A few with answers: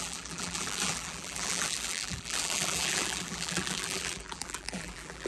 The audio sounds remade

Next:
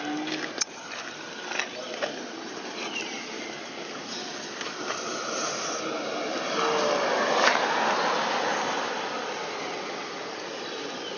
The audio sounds recorded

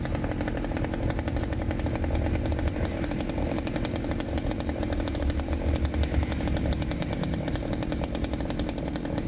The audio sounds remade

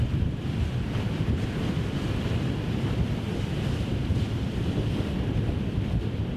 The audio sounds remade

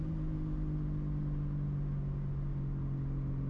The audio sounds recorded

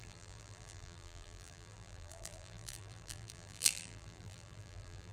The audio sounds remade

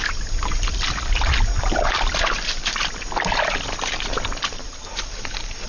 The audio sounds recorded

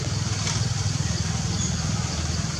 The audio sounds remade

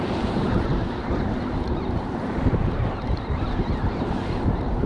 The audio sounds remade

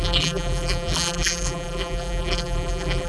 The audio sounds remade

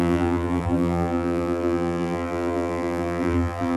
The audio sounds remade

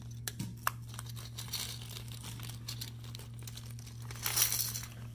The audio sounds recorded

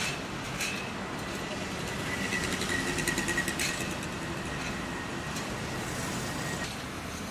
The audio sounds recorded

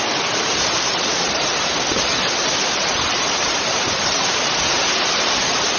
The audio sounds remade